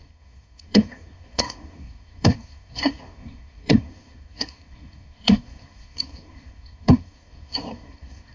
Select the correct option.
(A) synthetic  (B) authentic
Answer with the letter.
A